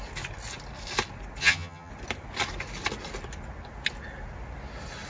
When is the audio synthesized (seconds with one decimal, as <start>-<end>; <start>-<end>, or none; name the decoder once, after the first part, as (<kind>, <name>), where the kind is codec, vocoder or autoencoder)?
1.4-1.9 (vocoder, HiFi-GAN)